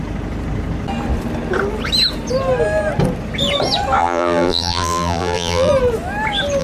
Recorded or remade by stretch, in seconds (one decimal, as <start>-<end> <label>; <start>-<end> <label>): 0.0-4.0 recorded; 4.0-5.7 remade; 5.7-6.6 recorded